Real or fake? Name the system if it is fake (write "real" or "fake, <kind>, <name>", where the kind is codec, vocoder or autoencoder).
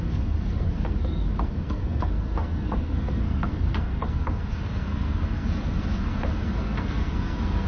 fake, codec, SNAC